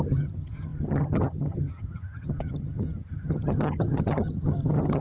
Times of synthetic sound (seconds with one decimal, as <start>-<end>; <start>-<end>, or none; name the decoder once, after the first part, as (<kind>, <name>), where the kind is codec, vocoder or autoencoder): 0.0-5.0 (vocoder, HiFi-GAN)